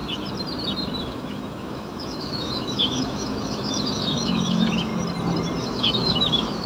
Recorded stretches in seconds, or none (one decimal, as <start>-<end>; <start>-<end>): 0.0-1.0; 4.9-5.6